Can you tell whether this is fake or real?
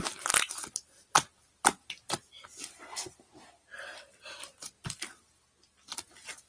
real